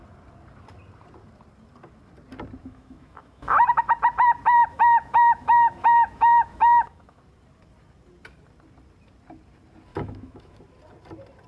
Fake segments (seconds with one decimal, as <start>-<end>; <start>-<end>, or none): 2.6-3.6; 4.6-7.2; 9.9-10.6